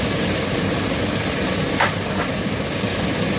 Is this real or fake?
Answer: real